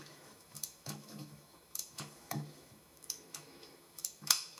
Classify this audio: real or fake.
fake